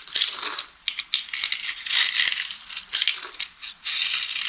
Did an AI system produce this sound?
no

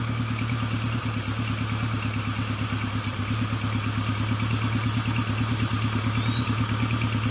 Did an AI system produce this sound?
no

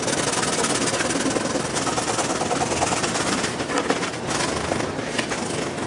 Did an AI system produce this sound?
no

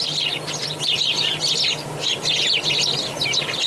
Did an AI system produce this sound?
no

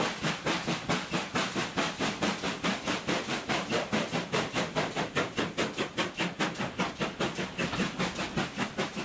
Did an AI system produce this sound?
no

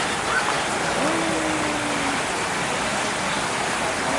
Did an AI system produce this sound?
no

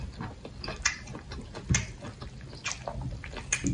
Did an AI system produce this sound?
no